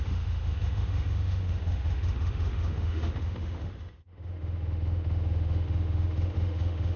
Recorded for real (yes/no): no